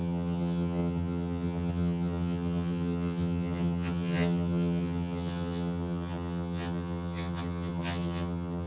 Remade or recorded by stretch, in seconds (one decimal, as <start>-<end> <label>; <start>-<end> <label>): 0.0-8.7 remade